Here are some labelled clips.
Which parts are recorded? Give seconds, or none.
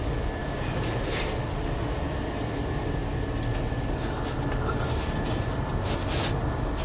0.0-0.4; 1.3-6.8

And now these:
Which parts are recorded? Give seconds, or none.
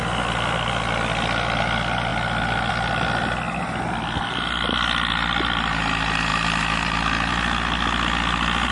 0.0-8.7